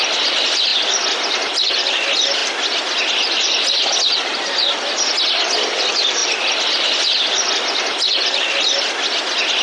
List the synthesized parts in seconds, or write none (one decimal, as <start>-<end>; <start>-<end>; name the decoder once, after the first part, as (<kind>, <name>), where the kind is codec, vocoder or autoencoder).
none